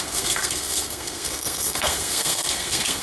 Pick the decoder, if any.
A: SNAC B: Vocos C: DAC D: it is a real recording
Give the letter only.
A